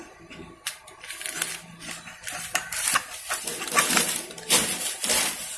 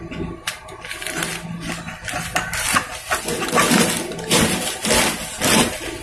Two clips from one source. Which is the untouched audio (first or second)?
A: second